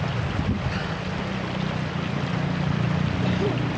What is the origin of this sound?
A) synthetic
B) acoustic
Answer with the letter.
B